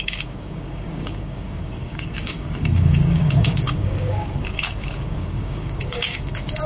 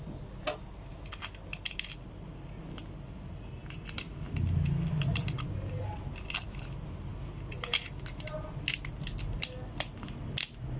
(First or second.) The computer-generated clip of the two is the first